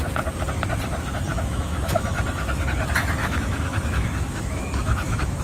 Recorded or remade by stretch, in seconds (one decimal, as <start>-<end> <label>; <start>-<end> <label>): 0.0-1.3 recorded; 1.3-2.1 remade; 2.1-3.2 recorded; 3.2-5.4 remade